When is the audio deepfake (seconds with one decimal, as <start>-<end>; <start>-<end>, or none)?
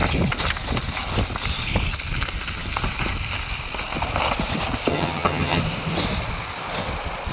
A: 4.9-5.6